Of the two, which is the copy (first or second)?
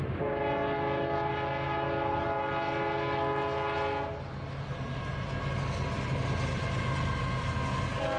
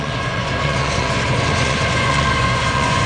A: second